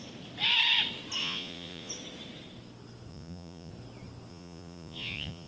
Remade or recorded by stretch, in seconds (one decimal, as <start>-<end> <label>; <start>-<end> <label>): 0.0-1.2 recorded; 1.2-1.9 remade; 1.9-3.1 recorded; 3.1-3.7 remade; 3.7-4.3 recorded; 4.3-5.5 remade